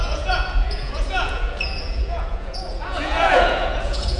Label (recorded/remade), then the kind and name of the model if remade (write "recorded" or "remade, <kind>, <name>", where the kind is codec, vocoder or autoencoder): remade, vocoder, Vocos